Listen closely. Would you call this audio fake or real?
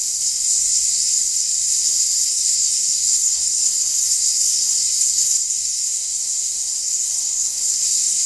fake